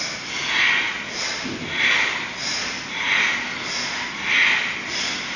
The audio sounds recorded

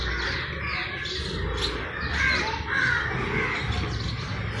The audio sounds recorded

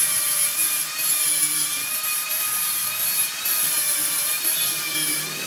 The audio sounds remade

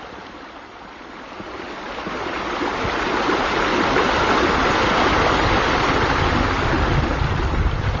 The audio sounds recorded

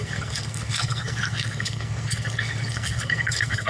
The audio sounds remade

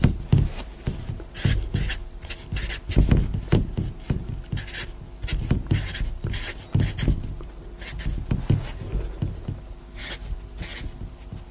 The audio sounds recorded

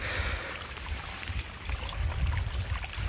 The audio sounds recorded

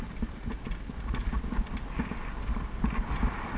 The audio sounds recorded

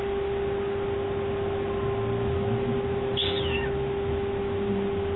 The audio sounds recorded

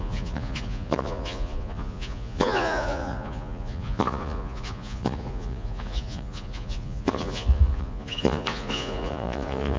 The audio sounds remade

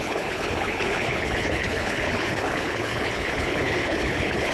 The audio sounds remade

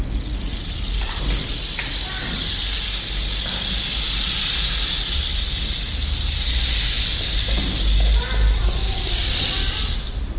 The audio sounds recorded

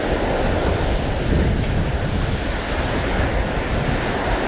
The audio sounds recorded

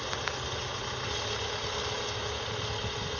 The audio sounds recorded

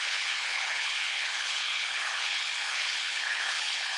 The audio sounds remade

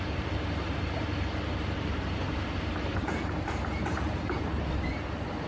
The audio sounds remade